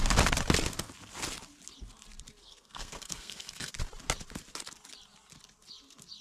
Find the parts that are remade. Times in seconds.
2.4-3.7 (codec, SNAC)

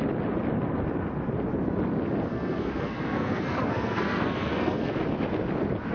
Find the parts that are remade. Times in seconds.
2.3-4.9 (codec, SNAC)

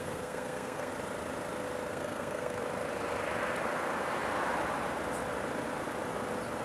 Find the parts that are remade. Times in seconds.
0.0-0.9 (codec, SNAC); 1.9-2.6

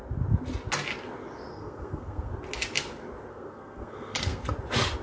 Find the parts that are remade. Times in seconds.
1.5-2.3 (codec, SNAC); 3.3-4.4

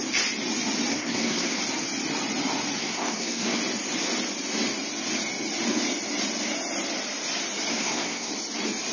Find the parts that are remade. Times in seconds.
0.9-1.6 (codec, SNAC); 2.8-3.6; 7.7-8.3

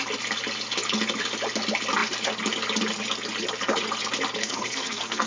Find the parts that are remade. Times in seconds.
4.4-5.3 (codec, SNAC)

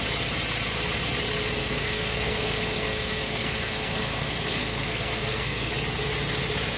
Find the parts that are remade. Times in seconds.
1.6-5.7 (codec, SNAC)

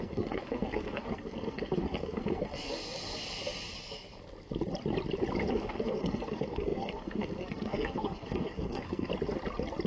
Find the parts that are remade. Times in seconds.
0.0-2.8 (codec, SNAC); 5.5-9.1